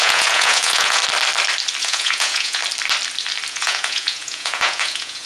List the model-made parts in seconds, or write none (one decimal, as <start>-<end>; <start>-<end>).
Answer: 0.0-1.0; 1.8-2.6; 3.5-5.3